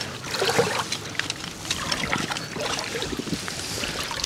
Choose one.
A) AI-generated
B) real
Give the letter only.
B